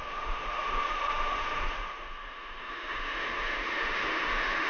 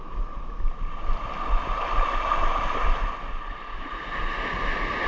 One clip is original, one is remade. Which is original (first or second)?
second